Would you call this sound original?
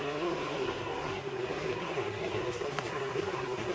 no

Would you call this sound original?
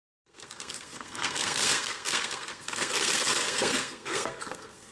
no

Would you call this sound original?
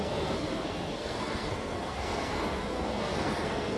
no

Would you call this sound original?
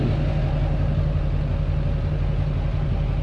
yes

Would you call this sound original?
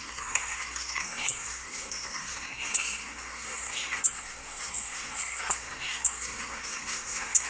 no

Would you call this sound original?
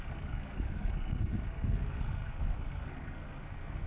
no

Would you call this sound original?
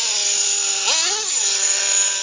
yes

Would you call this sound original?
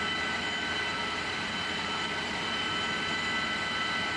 yes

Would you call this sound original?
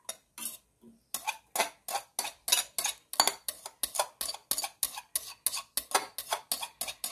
yes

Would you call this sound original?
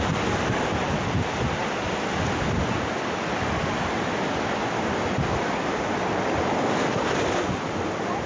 yes